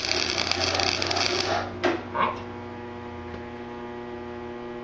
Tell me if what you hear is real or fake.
real